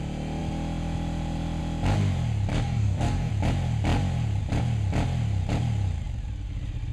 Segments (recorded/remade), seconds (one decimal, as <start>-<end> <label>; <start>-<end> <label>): 0.0-2.5 recorded; 2.5-3.3 remade; 3.3-6.9 recorded